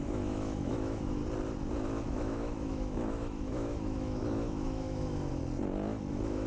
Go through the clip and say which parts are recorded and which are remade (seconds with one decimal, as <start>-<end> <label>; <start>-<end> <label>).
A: 0.0-1.2 remade; 1.2-2.1 recorded; 2.1-5.4 remade; 5.4-6.1 recorded; 6.1-6.5 remade